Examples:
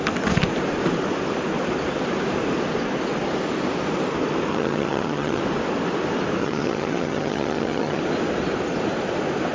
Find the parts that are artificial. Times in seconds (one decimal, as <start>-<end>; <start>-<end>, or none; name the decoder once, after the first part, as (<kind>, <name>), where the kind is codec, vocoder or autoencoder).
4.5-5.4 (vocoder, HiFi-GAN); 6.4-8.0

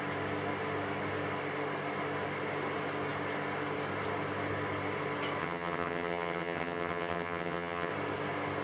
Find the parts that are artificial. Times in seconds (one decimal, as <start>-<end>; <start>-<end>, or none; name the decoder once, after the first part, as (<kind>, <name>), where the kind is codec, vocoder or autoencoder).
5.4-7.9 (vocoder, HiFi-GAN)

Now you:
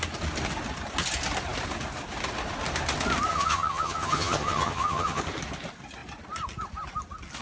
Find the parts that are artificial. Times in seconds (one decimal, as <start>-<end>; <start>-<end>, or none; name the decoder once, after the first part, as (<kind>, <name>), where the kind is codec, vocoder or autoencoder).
3.3-5.2 (vocoder, HiFi-GAN)